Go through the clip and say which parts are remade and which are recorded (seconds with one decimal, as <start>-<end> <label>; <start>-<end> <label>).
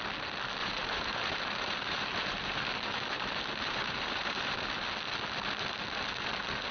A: 0.0-0.6 recorded; 0.6-4.6 remade; 4.6-6.7 recorded